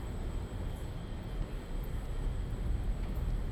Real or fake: real